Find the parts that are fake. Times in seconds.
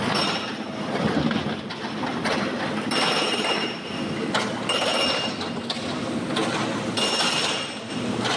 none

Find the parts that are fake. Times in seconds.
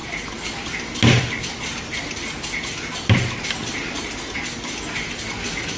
none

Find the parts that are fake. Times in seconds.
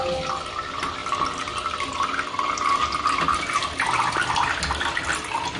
none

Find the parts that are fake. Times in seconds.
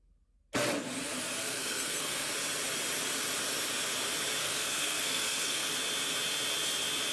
1.4-2.3 (codec, SNAC); 4.4-5.7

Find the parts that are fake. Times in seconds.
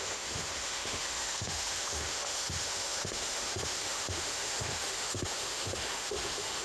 0.0-6.6 (autoencoder, DAC-VAE)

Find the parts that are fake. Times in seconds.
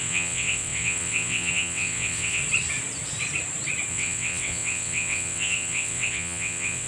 0.0-2.4 (vocoder, WaveNeXt); 3.9-6.9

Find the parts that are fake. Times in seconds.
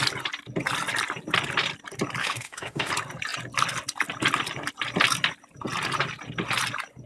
2.2-2.9 (autoencoder, DAC-VAE)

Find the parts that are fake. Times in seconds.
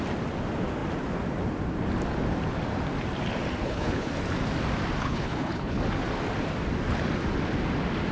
3.6-4.1 (codec, HILCodec); 5.0-5.8